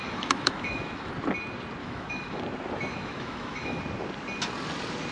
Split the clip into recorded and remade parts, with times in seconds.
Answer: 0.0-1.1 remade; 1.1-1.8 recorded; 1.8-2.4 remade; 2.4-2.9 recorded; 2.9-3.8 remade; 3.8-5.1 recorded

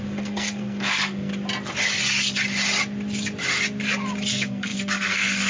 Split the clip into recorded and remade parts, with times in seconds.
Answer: 0.0-1.3 remade; 1.3-4.3 recorded; 4.3-5.5 remade

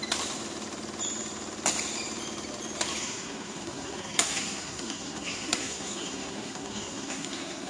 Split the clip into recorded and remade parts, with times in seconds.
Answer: 0.0-3.0 recorded; 3.0-7.7 remade

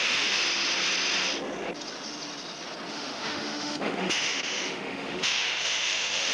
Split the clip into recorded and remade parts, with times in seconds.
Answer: 0.0-0.4 remade; 0.4-2.9 recorded; 2.9-6.3 remade

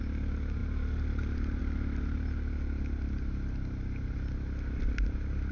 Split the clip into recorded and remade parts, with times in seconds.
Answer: 0.0-5.5 recorded

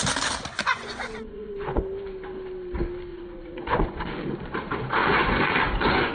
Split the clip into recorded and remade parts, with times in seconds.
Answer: 0.0-0.5 recorded; 0.5-1.8 remade; 1.8-3.1 recorded; 3.1-4.1 remade; 4.1-5.0 recorded; 5.0-6.1 remade